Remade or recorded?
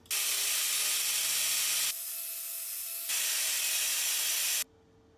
recorded